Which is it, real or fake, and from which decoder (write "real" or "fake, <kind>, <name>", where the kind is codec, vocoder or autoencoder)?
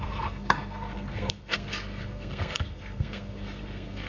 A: fake, codec, SNAC